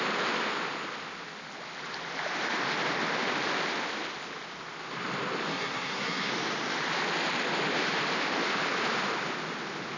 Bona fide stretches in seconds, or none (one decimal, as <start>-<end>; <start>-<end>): 0.0-5.5; 6.3-10.0